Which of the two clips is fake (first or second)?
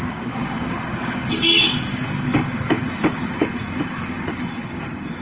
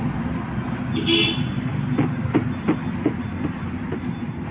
first